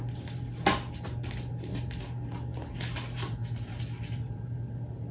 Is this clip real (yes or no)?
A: yes